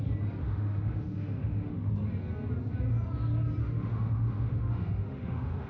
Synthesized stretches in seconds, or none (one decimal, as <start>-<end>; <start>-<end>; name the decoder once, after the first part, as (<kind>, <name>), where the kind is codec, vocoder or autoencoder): 0.4-1.9 (autoencoder, DAC-VAE); 3.6-5.7